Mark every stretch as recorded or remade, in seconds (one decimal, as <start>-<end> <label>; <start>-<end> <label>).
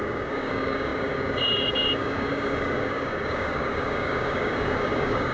0.0-5.3 remade